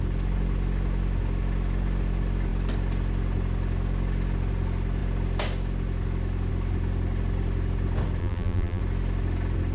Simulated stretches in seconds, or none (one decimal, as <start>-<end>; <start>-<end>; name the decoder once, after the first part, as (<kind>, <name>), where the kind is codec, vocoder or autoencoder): 8.2-8.8 (vocoder, BigVGAN v2)